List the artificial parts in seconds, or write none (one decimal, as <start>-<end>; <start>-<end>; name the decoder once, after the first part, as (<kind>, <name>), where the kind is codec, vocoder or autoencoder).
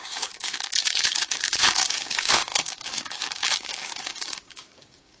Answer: 0.0-5.2 (codec, DAC)